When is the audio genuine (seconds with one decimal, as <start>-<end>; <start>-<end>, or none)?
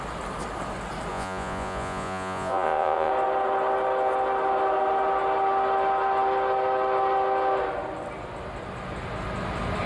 0.0-1.1; 3.1-9.9